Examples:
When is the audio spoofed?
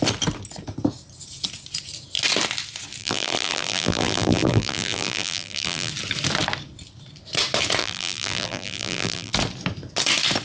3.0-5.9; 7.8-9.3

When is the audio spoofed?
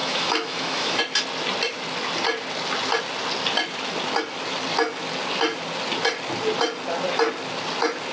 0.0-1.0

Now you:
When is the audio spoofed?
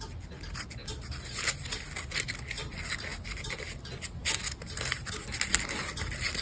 none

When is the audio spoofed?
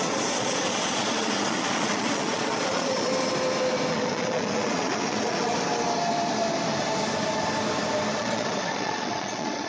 0.0-3.1; 3.9-5.5; 8.2-9.7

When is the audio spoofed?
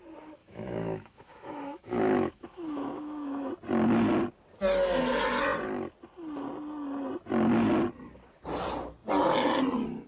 0.4-3.5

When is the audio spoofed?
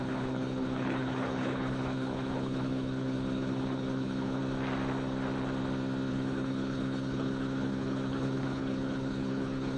0.0-4.4; 6.1-9.8